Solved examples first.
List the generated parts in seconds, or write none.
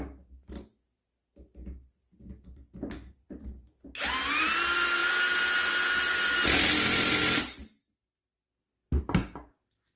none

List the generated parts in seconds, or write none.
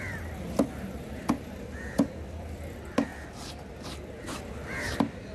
none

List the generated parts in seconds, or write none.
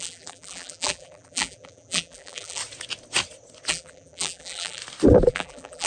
0.0-2.6 (vocoder, BigVGAN v2); 3.7-4.8; 5.3-5.9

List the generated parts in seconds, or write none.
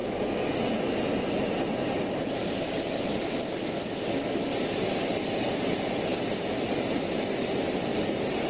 0.0-3.5 (vocoder, BigVGAN v2); 4.5-5.5; 7.9-8.5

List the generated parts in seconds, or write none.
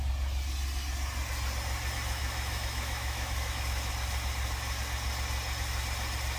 2.2-3.9 (autoencoder, DAC-VAE)